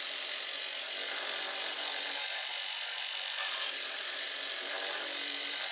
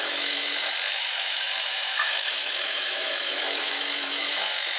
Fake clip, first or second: second